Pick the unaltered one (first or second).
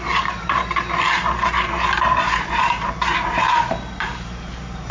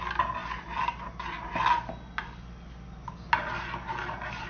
second